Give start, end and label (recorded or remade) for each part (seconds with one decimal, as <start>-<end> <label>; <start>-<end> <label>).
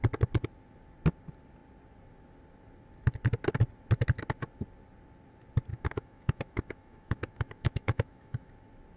0.0-5.7 recorded; 5.7-8.5 remade; 8.5-9.0 recorded